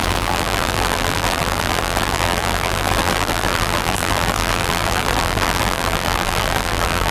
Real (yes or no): no